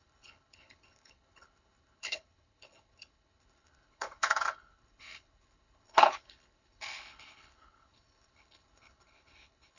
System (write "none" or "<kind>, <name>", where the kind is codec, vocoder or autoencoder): codec, HILCodec